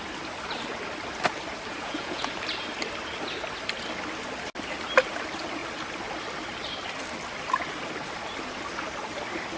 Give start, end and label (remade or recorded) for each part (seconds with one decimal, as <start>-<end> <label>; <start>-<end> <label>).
0.0-1.7 recorded; 1.7-2.3 remade; 2.3-9.6 recorded